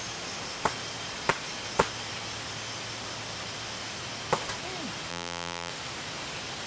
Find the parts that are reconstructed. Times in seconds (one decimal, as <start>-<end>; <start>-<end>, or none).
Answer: 5.1-5.7